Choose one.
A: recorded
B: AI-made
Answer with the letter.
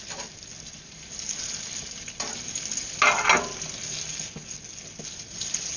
A